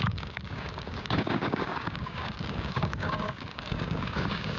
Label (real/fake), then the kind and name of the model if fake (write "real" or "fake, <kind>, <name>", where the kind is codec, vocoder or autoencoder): fake, codec, DAC